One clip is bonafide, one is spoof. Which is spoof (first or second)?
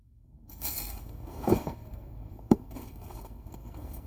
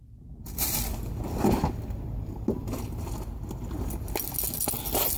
first